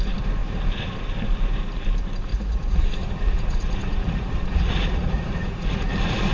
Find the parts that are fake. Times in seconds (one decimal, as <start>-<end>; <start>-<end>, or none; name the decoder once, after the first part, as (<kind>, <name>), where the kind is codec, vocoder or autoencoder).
2.3-6.3 (vocoder, Vocos)